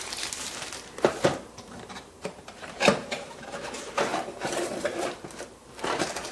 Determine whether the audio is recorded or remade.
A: remade